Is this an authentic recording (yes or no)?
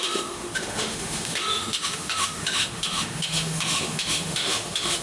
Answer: no